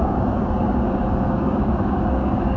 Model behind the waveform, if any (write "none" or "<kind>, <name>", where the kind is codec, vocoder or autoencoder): codec, DAC